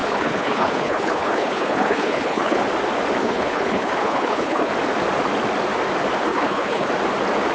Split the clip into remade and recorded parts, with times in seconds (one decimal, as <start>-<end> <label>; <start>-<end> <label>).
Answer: 0.0-2.6 remade; 2.6-3.2 recorded; 3.2-4.7 remade; 4.7-6.3 recorded; 6.3-6.9 remade; 6.9-7.5 recorded